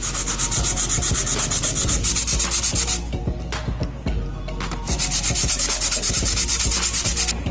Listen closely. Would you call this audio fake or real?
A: real